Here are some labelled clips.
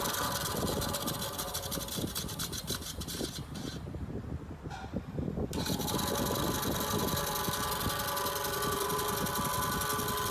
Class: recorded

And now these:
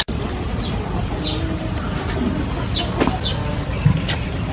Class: recorded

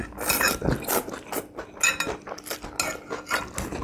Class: recorded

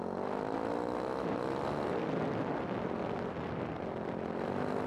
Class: recorded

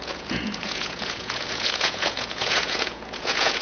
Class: remade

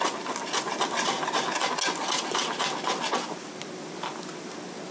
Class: recorded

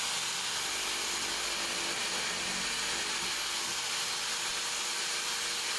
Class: recorded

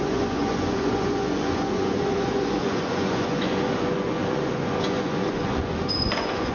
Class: remade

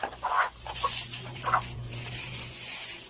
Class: remade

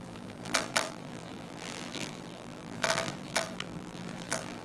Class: remade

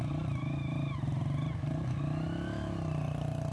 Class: recorded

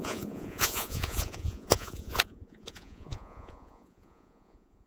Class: remade